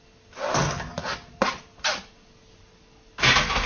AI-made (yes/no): no